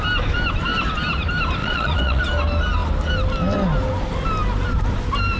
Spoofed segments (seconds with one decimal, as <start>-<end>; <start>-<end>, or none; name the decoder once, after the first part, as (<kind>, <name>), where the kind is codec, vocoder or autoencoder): 1.6-2.2 (vocoder, Vocos)